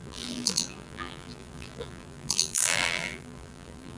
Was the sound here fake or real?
fake